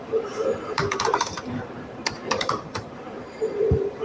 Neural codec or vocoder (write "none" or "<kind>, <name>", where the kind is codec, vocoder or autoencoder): vocoder, BigVGAN v2